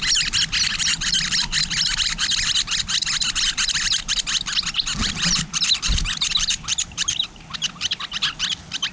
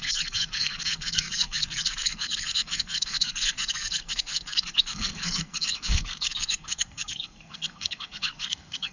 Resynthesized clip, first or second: second